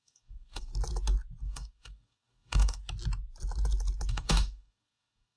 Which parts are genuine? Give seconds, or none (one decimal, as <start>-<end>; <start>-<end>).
0.7-1.4; 2.8-4.1